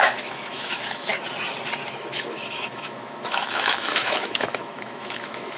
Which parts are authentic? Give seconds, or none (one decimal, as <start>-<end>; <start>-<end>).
1.1-1.9